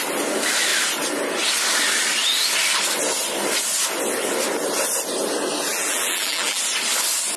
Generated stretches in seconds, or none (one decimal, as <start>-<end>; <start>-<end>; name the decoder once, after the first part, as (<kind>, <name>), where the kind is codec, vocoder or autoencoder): 5.7-6.6 (vocoder, BigVGAN v2)